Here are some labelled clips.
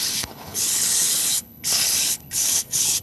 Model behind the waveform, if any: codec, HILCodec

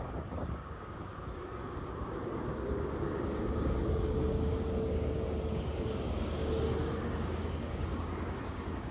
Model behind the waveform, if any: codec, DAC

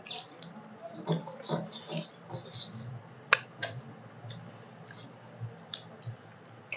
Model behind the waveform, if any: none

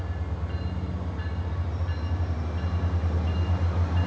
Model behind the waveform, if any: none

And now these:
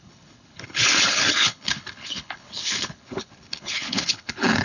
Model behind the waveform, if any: codec, HILCodec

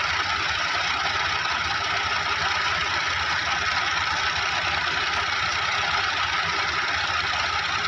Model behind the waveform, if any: none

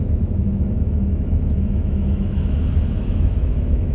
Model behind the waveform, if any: autoencoder, DAC-VAE